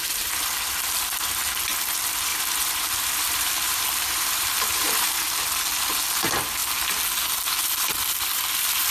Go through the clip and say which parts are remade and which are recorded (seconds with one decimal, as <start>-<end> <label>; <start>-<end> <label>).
0.0-2.3 recorded; 2.3-5.1 remade; 5.1-8.9 recorded